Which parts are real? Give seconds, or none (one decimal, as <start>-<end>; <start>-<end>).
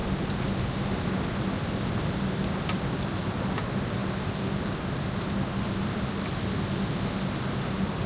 0.0-8.1